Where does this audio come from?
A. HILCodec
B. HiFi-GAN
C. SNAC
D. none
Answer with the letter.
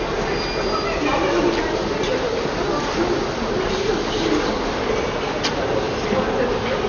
D